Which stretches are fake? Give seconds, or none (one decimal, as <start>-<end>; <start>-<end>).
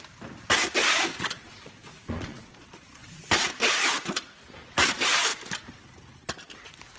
1.1-2.8